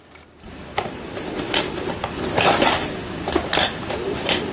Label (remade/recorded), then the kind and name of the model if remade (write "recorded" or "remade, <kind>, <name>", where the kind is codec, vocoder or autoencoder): recorded